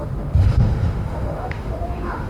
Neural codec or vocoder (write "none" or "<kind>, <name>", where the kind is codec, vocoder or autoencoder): autoencoder, DAC-VAE